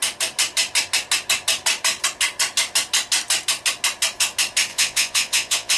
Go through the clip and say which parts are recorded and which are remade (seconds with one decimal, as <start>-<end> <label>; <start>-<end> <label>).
0.0-4.7 recorded; 4.7-5.8 remade